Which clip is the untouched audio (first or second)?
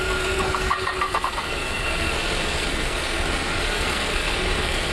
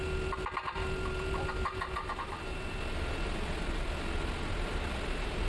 second